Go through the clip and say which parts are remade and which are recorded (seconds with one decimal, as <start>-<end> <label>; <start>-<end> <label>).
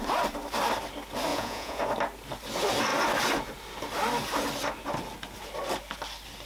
0.0-1.3 recorded; 1.3-1.8 remade; 1.8-6.5 recorded